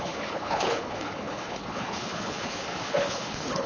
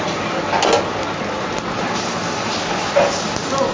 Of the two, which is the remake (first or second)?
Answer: first